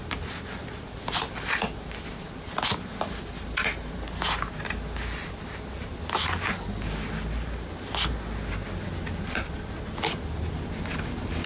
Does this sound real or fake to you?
real